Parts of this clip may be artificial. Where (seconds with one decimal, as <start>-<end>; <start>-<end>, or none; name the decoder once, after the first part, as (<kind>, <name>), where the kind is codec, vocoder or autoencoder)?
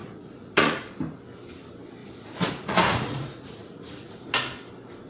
0.0-0.9 (vocoder, Vocos); 2.0-4.3